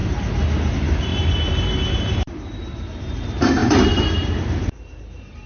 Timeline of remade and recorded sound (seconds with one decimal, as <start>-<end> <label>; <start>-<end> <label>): 0.0-0.7 recorded; 0.7-1.1 remade; 1.1-1.9 recorded; 1.9-5.5 remade

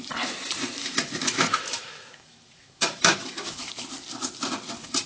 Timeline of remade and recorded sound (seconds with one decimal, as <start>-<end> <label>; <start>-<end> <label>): 0.0-0.8 recorded; 0.8-3.7 remade; 3.7-5.1 recorded

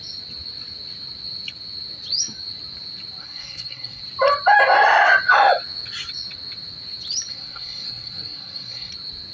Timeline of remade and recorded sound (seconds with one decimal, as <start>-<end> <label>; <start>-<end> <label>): 0.0-3.2 recorded; 3.2-4.0 remade; 4.0-7.3 recorded; 7.3-8.9 remade; 8.9-9.3 recorded

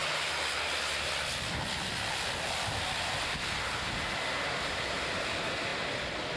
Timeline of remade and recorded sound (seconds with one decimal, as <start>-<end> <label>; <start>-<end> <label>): 0.0-6.4 recorded

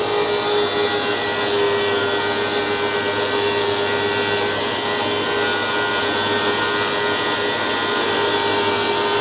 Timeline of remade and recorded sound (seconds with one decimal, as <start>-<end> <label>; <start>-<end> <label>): 0.0-9.2 recorded